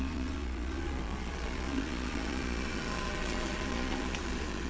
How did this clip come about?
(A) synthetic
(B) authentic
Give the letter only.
A